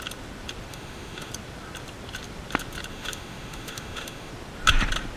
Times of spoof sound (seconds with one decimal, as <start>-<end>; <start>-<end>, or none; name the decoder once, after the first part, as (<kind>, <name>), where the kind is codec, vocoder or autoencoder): 0.7-1.3 (autoencoder, DAC-VAE); 2.9-4.3